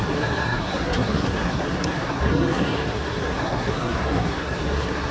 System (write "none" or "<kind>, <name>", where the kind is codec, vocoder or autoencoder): codec, SNAC